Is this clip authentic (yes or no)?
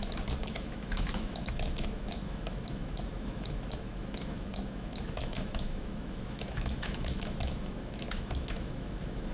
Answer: no